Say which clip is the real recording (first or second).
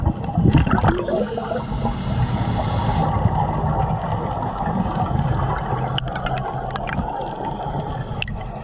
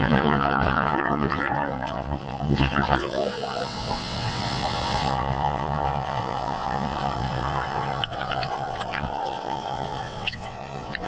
first